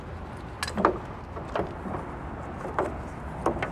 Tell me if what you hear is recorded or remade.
recorded